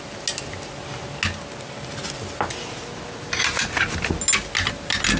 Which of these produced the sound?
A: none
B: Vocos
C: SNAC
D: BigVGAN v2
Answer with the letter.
A